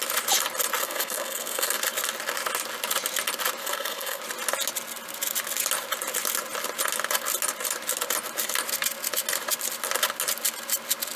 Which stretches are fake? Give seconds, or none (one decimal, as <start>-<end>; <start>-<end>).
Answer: 0.8-1.8; 3.6-4.2